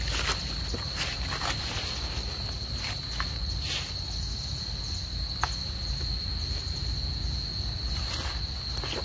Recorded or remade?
recorded